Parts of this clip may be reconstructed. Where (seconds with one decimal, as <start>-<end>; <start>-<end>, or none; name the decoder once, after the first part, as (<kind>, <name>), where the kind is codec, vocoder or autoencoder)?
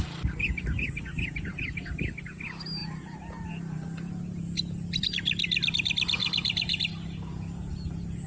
6.2-6.8 (vocoder, BigVGAN v2)